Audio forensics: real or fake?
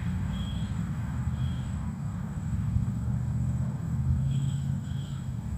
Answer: fake